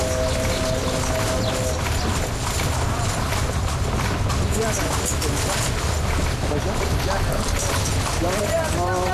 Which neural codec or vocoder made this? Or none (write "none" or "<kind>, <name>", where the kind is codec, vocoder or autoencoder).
none